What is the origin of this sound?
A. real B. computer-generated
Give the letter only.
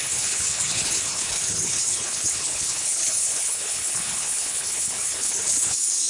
B